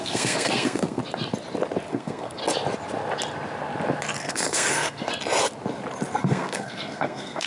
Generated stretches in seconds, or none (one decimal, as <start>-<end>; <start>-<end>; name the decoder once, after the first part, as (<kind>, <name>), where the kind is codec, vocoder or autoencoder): 0.0-1.0 (codec, SNAC); 1.9-2.4; 4.2-5.1; 6.2-7.5